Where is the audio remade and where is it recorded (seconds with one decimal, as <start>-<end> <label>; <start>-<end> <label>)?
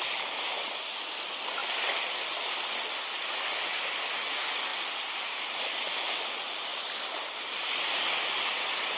0.0-9.0 recorded